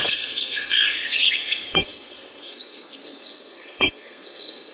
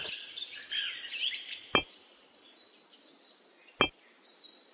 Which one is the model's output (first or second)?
first